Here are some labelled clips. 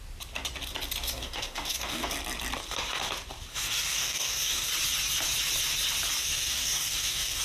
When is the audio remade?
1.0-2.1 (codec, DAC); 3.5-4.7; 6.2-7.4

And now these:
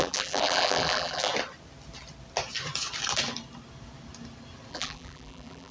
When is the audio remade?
0.0-1.3 (vocoder, BigVGAN v2); 4.7-5.7

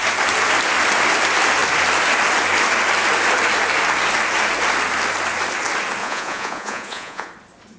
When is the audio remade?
6.0-7.3 (vocoder, Vocos)